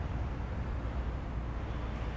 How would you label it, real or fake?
real